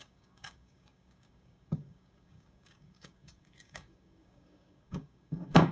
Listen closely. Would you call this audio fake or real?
fake